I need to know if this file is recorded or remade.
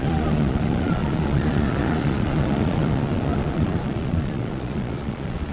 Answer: remade